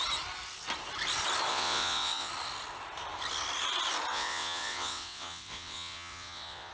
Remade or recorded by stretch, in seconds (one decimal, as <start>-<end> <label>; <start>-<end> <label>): 0.0-1.5 recorded; 1.5-2.3 remade; 2.3-4.1 recorded; 4.1-6.7 remade